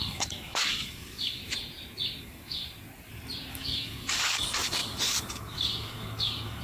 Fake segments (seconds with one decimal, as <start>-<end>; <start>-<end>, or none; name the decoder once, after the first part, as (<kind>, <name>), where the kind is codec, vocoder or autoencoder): 0.0-1.4 (codec, DAC); 2.2-2.6; 3.5-6.6